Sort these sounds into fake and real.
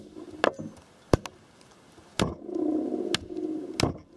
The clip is real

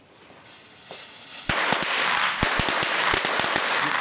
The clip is real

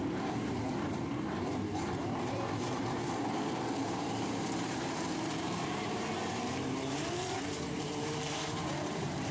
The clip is fake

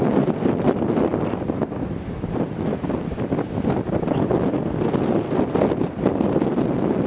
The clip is real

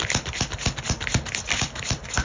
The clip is real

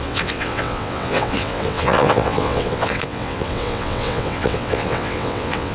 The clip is fake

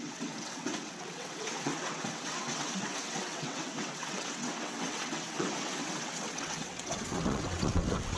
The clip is fake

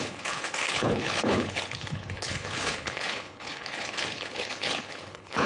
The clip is fake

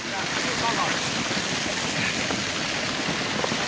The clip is real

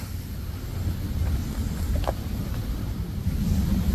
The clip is real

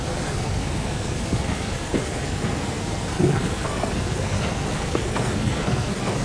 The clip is fake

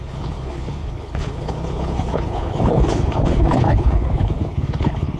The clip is fake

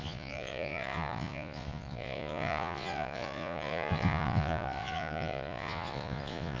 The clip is fake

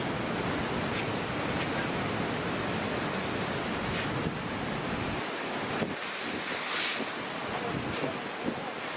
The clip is real